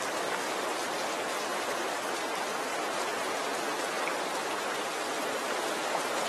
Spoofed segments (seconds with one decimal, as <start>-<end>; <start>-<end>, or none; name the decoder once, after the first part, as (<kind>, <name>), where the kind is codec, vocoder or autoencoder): 1.5-2.2 (vocoder, BigVGAN v2); 2.7-5.7